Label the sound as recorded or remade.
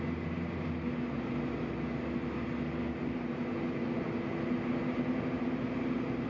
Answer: recorded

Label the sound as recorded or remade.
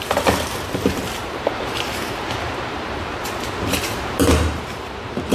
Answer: remade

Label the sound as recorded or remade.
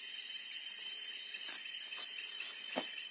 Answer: recorded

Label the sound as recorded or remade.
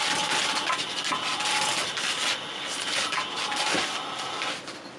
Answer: recorded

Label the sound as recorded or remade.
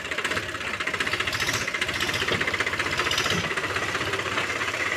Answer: recorded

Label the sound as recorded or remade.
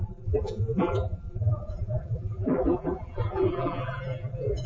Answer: remade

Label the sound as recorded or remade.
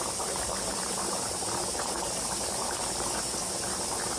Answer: remade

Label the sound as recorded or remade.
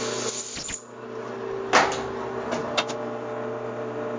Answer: recorded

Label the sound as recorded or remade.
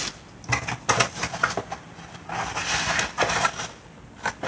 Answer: recorded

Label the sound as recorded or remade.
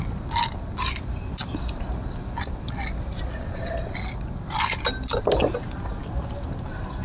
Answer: recorded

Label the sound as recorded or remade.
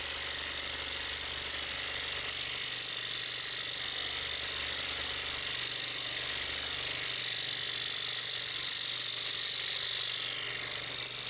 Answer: recorded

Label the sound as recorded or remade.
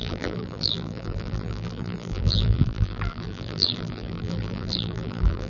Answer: remade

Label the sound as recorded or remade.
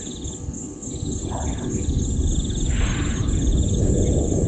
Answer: recorded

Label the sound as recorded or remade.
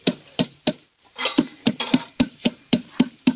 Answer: remade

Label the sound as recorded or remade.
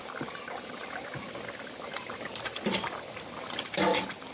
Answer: remade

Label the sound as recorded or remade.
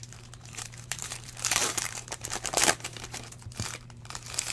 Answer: remade